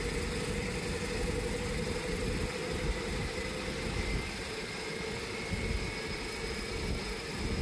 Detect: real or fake real